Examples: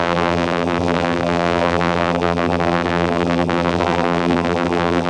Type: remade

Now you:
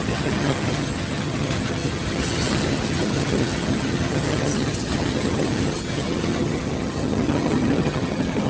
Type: remade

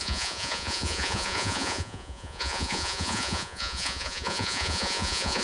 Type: remade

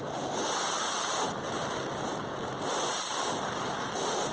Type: recorded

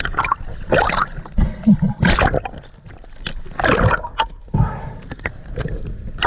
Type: recorded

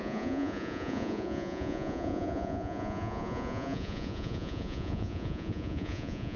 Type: remade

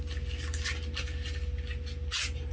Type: recorded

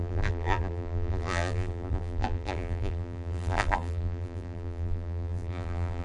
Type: remade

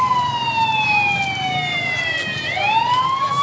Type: recorded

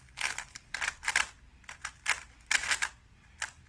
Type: remade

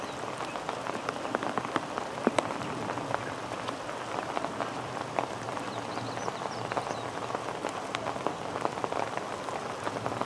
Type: recorded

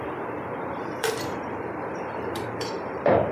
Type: remade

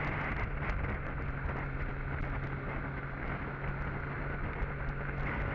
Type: recorded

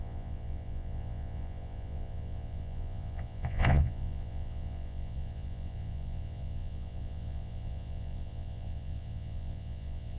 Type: remade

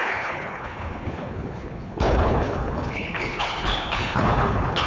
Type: remade